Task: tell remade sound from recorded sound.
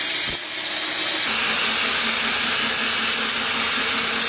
recorded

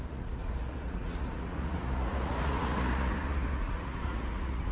remade